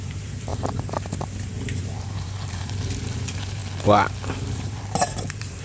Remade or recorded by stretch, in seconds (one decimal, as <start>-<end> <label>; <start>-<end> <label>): 0.0-0.5 remade; 0.5-1.8 recorded; 1.8-3.6 remade; 3.6-4.5 recorded; 4.5-5.6 remade